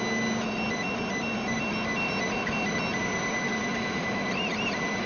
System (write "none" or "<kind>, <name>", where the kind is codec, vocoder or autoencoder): none